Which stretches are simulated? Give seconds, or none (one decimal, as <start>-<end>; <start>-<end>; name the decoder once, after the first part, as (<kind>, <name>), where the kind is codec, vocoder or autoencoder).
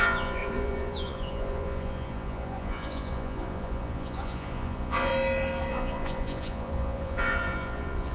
0.0-5.1 (vocoder, Vocos); 5.7-8.1